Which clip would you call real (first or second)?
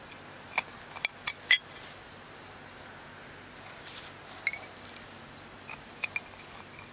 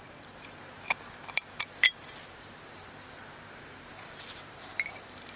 first